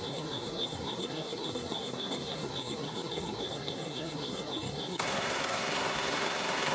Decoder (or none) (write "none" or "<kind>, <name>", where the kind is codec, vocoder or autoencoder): codec, SNAC